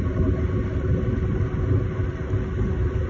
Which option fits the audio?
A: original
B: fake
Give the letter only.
A